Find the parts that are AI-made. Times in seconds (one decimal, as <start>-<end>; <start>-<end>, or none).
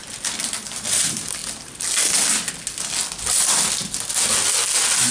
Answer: none